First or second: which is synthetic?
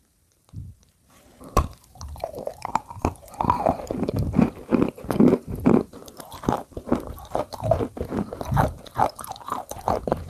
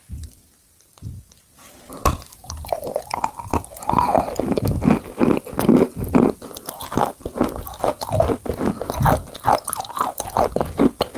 first